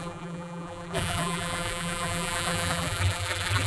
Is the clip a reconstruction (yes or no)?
yes